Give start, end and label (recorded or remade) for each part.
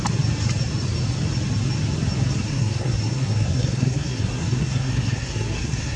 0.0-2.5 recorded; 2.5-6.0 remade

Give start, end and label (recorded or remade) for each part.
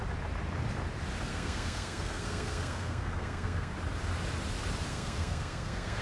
0.0-1.3 recorded; 1.3-3.7 remade; 3.7-4.9 recorded; 4.9-6.0 remade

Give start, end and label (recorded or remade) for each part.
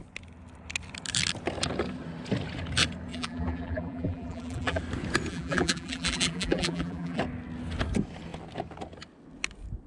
0.0-3.1 recorded; 3.1-4.8 remade; 4.8-5.3 recorded; 5.3-7.2 remade; 7.2-9.9 recorded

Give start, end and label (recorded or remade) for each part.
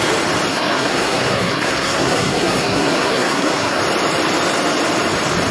0.0-0.5 recorded; 0.5-3.8 remade; 3.8-5.5 recorded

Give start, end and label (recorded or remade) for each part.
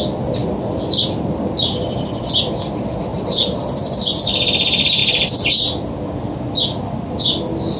0.0-0.4 recorded; 0.4-1.0 remade; 1.0-3.1 recorded; 3.1-3.9 remade; 3.9-7.8 recorded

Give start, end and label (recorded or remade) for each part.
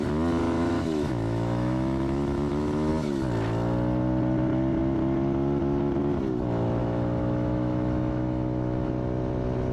0.0-0.4 recorded; 0.4-2.9 remade; 2.9-6.8 recorded; 6.8-8.9 remade; 8.9-9.7 recorded